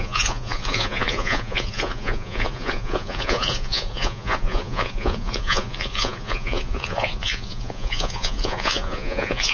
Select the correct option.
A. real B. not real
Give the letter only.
B